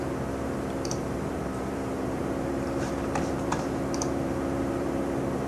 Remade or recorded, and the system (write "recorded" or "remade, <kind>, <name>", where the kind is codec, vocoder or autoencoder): remade, vocoder, BigVGAN v2